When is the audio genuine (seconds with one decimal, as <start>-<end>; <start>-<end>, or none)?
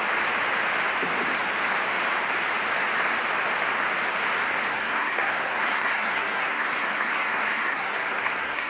0.0-4.7